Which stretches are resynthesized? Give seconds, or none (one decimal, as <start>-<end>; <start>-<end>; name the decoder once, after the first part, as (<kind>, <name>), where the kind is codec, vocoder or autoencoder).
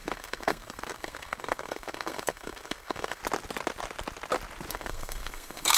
0.0-3.2 (codec, SNAC); 4.7-5.8